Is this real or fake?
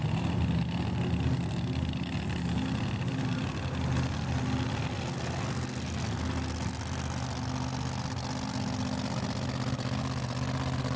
real